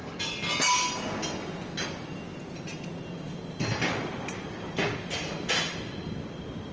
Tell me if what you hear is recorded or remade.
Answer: recorded